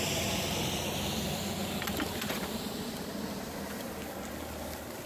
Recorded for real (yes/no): yes